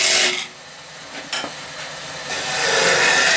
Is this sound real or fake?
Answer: real